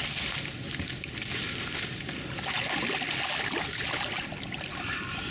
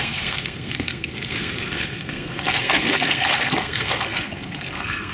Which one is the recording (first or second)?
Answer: first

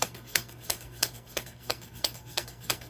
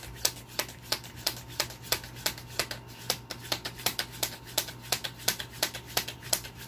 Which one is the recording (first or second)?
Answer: second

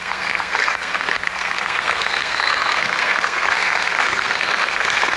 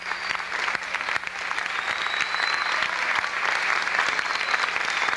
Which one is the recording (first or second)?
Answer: second